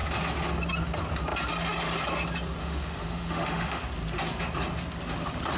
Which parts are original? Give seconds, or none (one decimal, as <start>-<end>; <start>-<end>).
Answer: 0.0-2.6; 3.8-5.6